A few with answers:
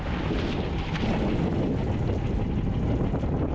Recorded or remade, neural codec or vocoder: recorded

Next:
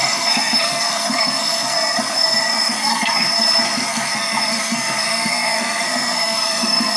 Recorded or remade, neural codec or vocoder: remade, codec, SNAC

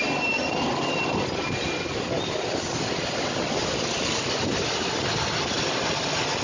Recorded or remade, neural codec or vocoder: recorded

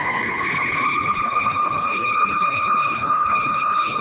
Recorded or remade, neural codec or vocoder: remade, codec, HILCodec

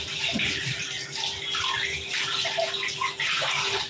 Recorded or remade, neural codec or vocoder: recorded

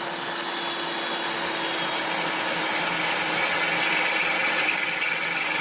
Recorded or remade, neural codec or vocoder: recorded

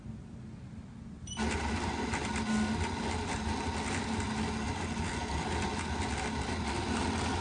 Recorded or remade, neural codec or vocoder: recorded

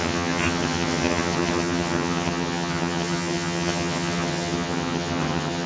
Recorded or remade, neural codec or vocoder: remade, vocoder, HiFi-GAN